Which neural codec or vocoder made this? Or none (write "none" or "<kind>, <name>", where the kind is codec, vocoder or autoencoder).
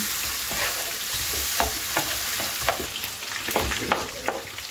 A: none